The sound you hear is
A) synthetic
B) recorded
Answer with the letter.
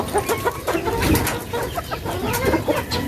B